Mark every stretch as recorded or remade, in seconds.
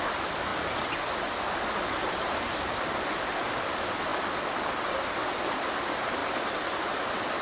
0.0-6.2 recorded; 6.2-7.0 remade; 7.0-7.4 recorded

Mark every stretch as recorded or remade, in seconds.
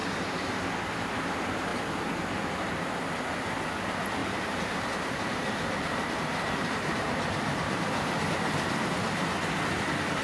0.0-1.7 recorded; 1.7-2.9 remade; 2.9-4.2 recorded; 4.2-8.9 remade; 8.9-10.2 recorded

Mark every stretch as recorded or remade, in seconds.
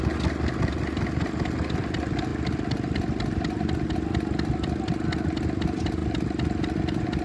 0.0-7.2 recorded